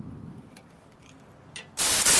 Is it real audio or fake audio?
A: real